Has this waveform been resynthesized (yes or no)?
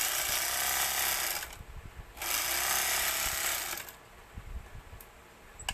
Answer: no